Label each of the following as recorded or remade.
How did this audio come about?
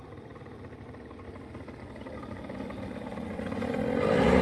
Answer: recorded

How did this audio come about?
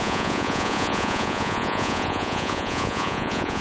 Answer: remade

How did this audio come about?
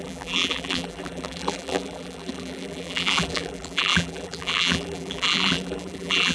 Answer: remade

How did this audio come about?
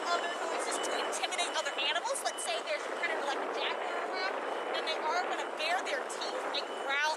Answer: recorded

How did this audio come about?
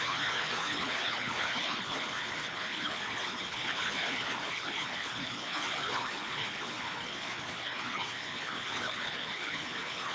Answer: remade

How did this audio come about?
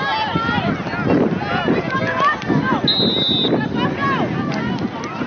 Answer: recorded